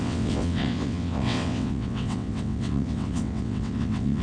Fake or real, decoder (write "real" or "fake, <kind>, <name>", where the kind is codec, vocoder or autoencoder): fake, vocoder, WaveNeXt